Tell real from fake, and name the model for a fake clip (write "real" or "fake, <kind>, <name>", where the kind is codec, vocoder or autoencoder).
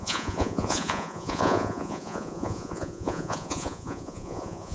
fake, vocoder, Vocos